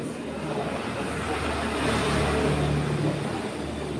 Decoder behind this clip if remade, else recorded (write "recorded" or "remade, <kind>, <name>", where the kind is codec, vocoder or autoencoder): recorded